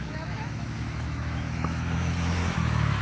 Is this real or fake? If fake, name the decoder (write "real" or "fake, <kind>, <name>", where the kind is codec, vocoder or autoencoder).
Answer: fake, autoencoder, DAC-VAE